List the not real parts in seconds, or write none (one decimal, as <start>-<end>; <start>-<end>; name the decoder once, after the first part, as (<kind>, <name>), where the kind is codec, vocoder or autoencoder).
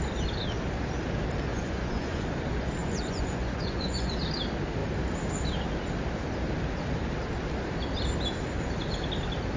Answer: 1.5-2.2 (vocoder, Vocos); 2.8-4.1